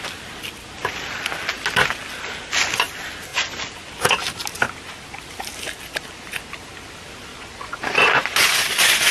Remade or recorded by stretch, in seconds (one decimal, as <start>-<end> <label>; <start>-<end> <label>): 0.0-7.3 recorded; 7.3-9.1 remade